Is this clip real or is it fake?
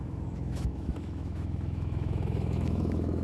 fake